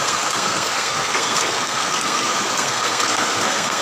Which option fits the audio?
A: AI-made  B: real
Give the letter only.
A